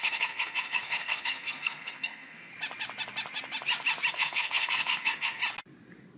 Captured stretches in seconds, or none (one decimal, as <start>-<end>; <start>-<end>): 2.5-4.1; 5.4-6.2